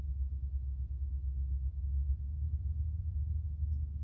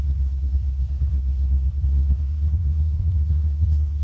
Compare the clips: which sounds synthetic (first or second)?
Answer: second